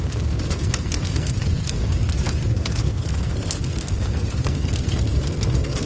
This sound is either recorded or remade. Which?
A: remade